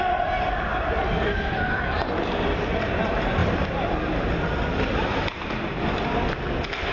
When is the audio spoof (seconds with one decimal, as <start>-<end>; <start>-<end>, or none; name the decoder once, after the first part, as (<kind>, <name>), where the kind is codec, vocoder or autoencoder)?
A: none